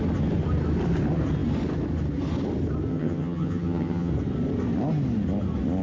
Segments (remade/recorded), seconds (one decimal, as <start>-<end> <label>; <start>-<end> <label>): 0.0-2.9 recorded; 2.9-4.1 remade; 4.1-5.8 recorded